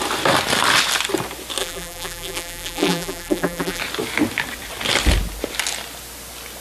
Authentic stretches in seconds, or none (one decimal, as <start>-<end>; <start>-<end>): 0.0-1.6; 3.8-6.6